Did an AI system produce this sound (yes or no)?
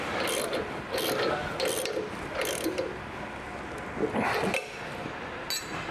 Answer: no